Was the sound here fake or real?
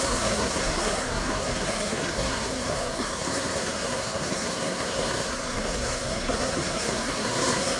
fake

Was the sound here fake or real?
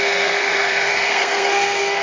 fake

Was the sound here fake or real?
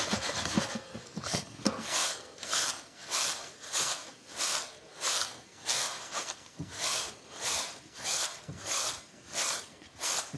fake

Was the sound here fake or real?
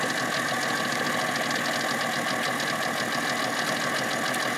real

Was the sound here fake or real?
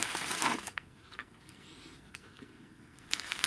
fake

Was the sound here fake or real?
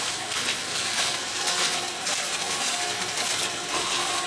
fake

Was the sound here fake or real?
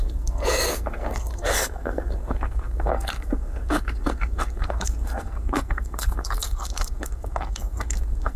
fake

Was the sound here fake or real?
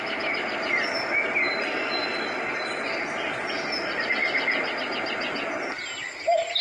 real